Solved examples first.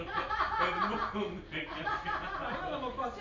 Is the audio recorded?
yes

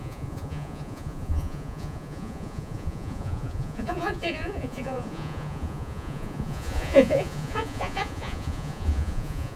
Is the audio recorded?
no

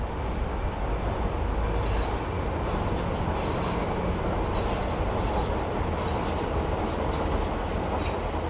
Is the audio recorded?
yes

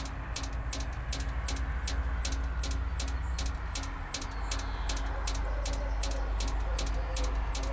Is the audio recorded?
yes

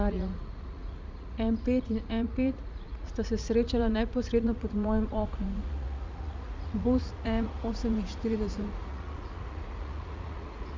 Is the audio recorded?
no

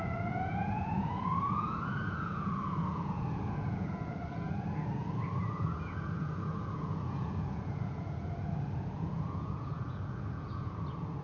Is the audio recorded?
no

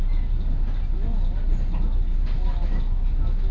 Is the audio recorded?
yes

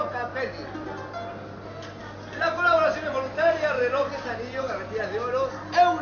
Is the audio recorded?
yes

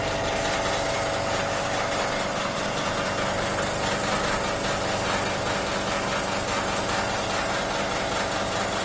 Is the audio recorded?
yes